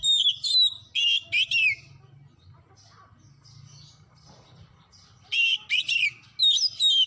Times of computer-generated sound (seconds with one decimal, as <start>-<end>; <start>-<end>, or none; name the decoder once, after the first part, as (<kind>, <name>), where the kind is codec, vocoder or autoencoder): none